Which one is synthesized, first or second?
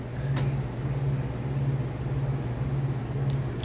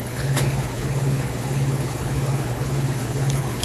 second